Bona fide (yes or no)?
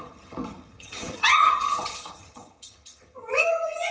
no